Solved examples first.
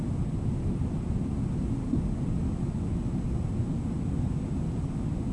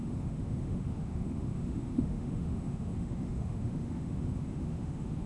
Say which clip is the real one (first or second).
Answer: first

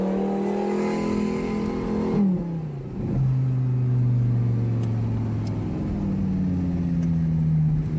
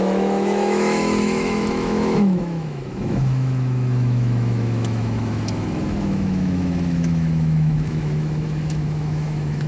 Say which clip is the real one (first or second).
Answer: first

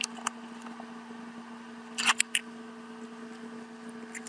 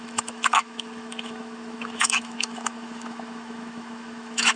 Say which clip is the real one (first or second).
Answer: first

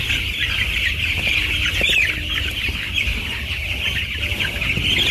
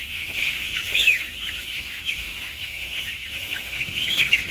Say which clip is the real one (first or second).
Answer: first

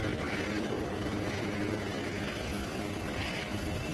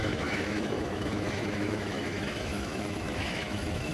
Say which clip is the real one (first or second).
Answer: first